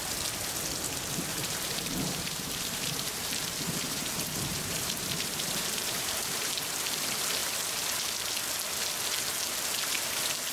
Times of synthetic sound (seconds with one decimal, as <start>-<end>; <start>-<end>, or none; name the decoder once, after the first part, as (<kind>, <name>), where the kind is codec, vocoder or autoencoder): 1.3-6.5 (vocoder, BigVGAN v2)